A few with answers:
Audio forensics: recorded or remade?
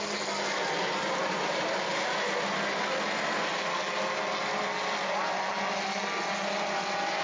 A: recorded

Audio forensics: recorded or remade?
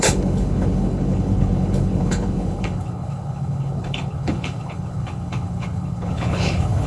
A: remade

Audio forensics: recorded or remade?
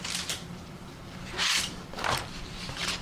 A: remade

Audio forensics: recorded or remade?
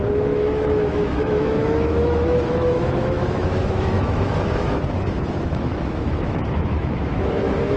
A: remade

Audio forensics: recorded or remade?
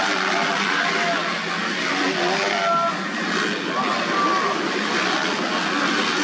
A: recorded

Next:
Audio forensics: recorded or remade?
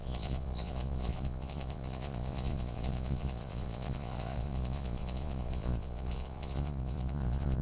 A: remade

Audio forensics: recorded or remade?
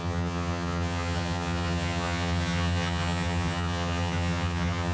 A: remade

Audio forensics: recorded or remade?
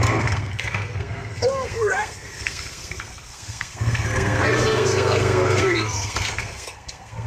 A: remade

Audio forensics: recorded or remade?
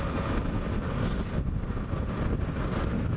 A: recorded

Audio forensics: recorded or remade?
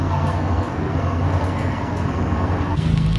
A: remade